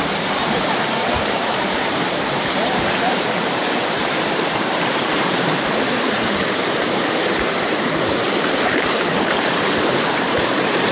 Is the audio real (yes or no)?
no